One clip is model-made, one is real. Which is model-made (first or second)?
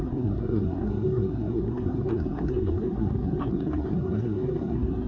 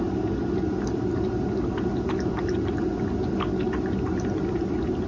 first